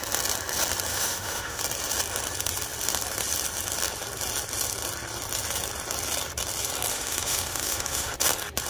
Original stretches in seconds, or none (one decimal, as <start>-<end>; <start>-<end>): 0.0-0.9; 1.6-6.9; 8.1-8.7